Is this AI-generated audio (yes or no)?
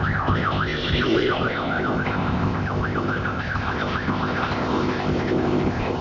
yes